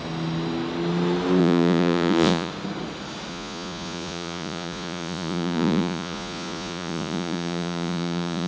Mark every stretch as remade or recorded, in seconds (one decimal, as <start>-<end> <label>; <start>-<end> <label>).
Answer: 0.0-1.4 recorded; 1.4-2.5 remade; 2.5-3.3 recorded; 3.3-8.5 remade